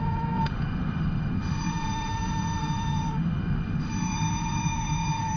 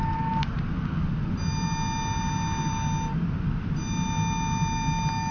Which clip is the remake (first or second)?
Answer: first